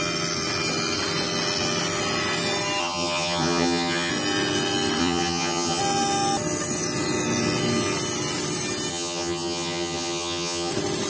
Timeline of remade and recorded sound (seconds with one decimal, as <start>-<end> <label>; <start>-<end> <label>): 0.0-2.8 recorded; 2.8-4.1 remade; 4.1-5.0 recorded; 5.0-5.8 remade; 5.8-8.9 recorded; 8.9-10.7 remade; 10.7-11.1 recorded